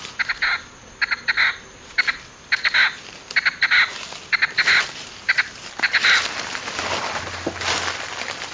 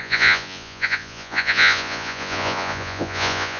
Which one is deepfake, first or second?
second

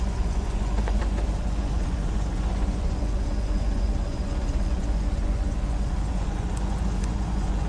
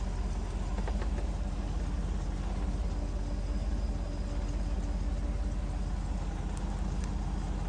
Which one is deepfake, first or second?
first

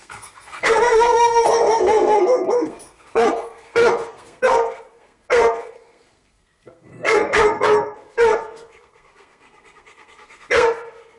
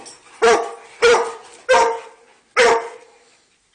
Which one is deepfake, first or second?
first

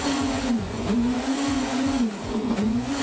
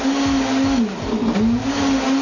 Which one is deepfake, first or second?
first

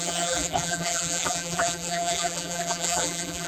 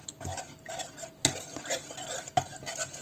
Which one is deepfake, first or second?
first